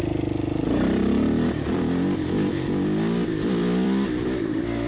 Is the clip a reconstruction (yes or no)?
yes